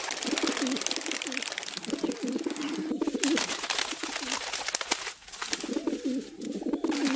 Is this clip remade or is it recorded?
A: recorded